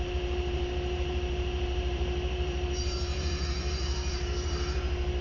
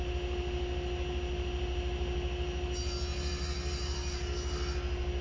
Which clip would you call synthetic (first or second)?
first